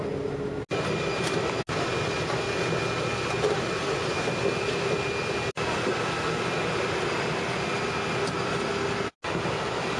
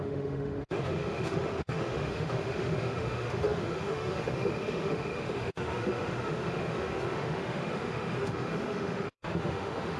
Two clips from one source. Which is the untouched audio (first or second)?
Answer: first